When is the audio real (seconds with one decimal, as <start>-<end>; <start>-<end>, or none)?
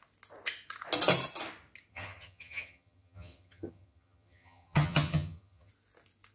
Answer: 0.0-1.9; 5.7-6.3